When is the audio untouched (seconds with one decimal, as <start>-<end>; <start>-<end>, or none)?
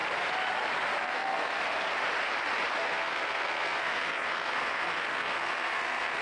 0.0-1.0; 1.6-2.8